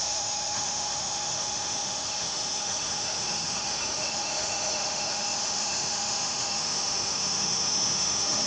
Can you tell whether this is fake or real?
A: fake